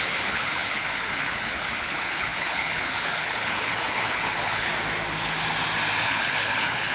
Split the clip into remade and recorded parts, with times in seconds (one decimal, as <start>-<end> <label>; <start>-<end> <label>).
0.0-4.7 remade; 4.7-6.0 recorded; 6.0-6.9 remade